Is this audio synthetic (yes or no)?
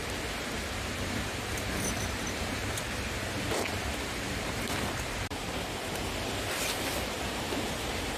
yes